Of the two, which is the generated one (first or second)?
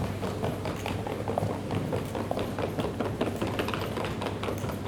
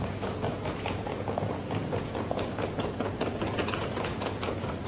second